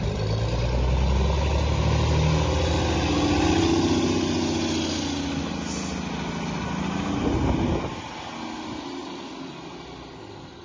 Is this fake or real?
real